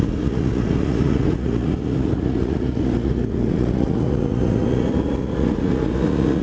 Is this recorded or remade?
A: remade